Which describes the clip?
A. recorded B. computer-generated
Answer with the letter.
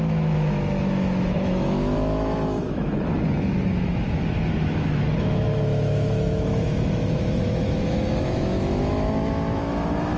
B